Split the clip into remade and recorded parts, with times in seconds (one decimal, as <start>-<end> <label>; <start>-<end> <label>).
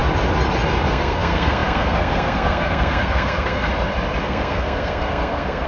0.0-0.9 recorded; 0.9-3.7 remade; 3.7-4.2 recorded; 4.2-5.7 remade